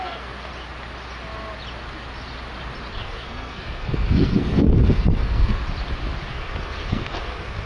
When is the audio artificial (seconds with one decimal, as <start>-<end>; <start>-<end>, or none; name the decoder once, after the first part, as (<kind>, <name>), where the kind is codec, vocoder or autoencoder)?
0.0-0.5 (codec, SNAC); 2.9-5.6; 6.3-7.7